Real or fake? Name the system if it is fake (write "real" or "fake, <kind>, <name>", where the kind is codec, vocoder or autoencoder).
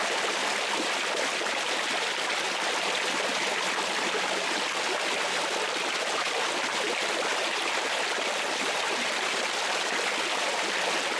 real